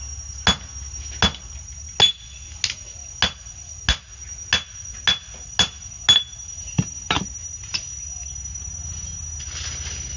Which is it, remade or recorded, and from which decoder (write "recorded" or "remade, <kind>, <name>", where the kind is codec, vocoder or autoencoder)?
recorded